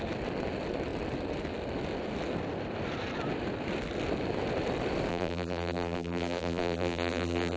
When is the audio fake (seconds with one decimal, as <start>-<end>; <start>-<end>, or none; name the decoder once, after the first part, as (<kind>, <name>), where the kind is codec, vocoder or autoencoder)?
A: 5.1-7.6 (vocoder, BigVGAN v2)